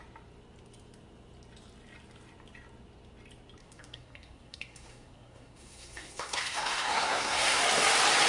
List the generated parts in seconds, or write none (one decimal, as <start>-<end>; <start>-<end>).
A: 3.6-7.6